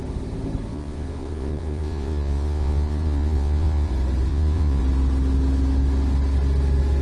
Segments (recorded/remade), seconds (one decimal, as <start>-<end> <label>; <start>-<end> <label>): 0.0-0.7 recorded; 0.7-3.9 remade; 3.9-4.3 recorded; 4.3-4.8 remade; 4.8-7.0 recorded